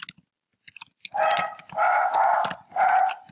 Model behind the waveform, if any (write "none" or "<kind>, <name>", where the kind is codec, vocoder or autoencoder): none